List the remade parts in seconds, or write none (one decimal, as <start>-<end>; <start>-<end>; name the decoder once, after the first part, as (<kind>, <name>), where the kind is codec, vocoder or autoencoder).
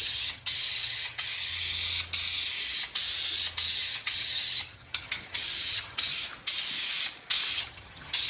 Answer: 0.0-1.5 (vocoder, HiFi-GAN); 3.7-6.1; 7.5-8.3